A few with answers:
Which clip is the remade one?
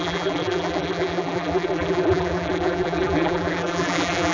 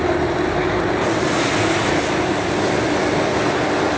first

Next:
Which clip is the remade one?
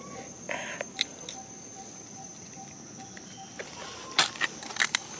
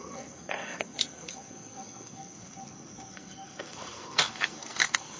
second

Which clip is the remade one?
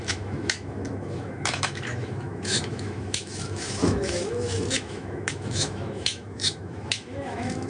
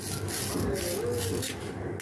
first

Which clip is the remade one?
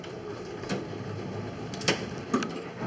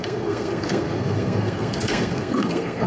second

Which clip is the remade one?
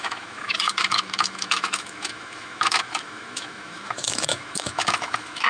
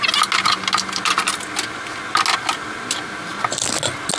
first